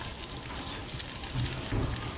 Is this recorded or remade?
recorded